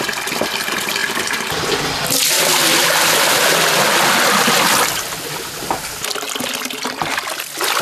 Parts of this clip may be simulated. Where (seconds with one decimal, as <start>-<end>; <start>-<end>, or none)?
none